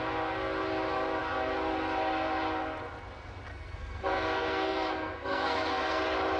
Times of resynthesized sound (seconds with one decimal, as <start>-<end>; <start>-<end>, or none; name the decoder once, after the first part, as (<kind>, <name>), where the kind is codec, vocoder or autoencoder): 3.5-6.0 (codec, SNAC)